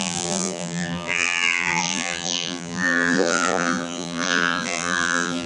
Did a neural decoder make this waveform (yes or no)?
yes